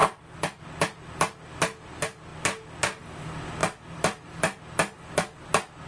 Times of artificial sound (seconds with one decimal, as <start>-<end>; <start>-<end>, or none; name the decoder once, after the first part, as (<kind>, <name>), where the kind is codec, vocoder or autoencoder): 0.0-0.6 (vocoder, BigVGAN v2); 3.6-4.6